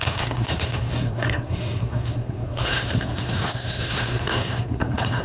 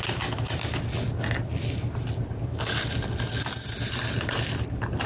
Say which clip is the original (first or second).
second